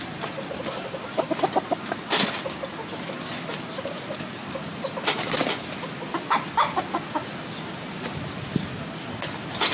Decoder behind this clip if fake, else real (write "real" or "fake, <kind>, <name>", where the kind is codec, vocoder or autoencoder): real